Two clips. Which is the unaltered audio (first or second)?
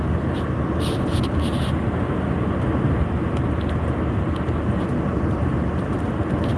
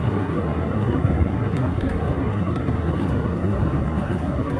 first